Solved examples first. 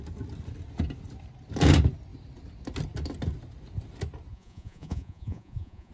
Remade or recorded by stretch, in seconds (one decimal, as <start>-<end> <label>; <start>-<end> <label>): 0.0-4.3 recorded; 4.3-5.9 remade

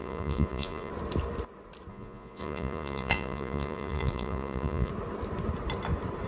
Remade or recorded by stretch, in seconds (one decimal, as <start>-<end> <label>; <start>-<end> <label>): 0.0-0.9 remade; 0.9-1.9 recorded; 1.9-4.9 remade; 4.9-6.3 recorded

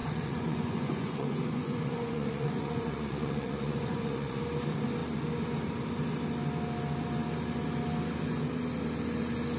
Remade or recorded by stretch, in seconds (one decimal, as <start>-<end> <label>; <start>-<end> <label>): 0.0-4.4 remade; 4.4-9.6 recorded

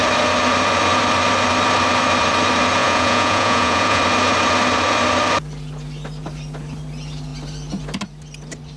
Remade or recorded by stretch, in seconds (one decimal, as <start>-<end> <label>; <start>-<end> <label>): 0.0-2.8 recorded; 2.8-4.0 remade; 4.0-8.8 recorded

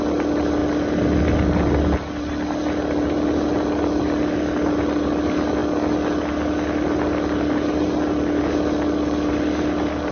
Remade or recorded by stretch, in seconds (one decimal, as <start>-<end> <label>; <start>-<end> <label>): 0.0-10.1 recorded